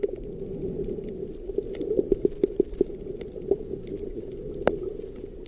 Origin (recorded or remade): recorded